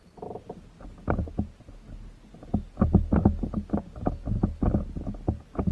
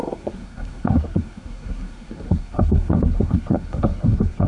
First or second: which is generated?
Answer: second